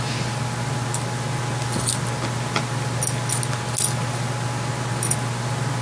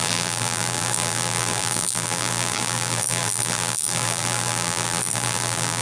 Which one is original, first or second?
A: first